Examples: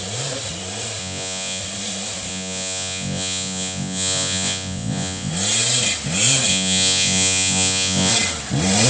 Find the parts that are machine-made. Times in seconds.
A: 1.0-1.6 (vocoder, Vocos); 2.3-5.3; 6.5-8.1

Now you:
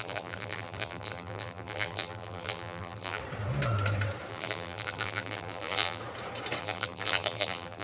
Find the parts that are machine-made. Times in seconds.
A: 0.0-3.2 (vocoder, BigVGAN v2); 4.3-6.0; 6.6-7.8